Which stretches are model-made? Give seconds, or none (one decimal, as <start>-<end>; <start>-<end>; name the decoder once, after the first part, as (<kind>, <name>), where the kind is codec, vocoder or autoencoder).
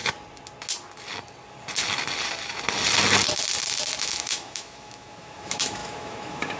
4.0-6.6 (autoencoder, DAC-VAE)